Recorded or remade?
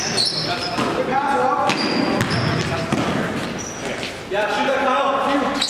recorded